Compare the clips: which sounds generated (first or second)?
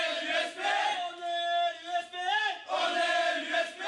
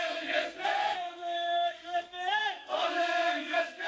second